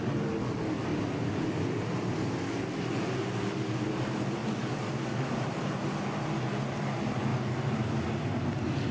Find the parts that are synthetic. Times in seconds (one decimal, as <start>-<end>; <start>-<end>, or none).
0.9-1.5; 4.4-5.6